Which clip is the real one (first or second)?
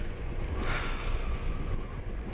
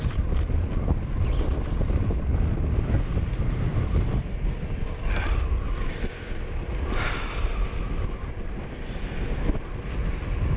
second